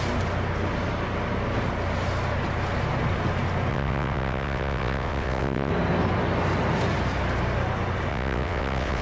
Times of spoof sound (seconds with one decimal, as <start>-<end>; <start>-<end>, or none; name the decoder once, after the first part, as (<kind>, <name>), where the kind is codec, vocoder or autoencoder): 3.7-5.7 (vocoder, WaveNeXt); 8.1-9.0